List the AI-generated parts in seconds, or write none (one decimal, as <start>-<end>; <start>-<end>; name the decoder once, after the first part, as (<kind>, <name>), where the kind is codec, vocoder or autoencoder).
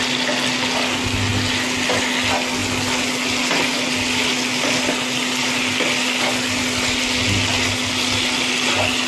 none